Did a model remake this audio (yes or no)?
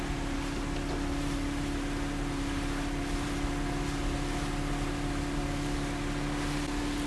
no